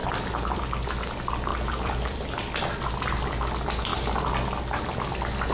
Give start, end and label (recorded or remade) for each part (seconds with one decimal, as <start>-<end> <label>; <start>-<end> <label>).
0.0-0.8 remade; 0.8-1.5 recorded; 1.5-2.7 remade; 2.7-5.5 recorded